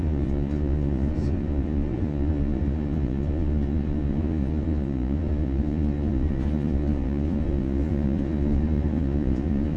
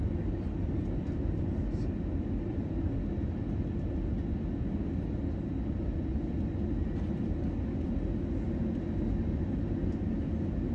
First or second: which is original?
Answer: second